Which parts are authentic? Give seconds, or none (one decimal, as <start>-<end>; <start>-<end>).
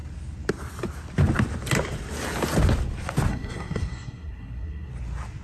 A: 0.0-3.3; 4.9-5.4